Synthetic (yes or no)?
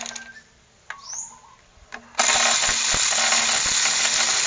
no